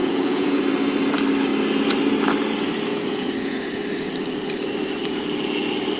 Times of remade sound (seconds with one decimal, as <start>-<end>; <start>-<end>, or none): 0.0-0.6; 2.9-3.7